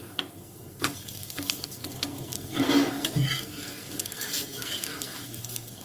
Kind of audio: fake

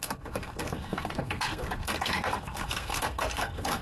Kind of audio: fake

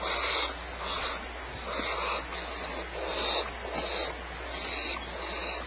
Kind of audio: real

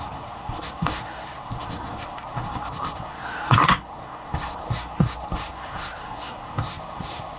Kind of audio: fake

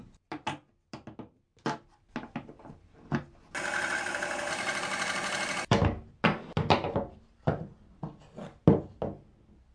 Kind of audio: real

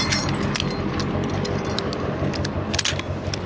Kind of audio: real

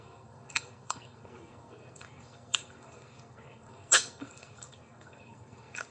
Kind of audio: fake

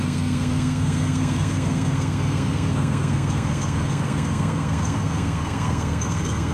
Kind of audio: fake